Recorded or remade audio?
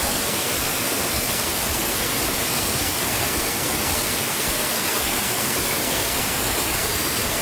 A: remade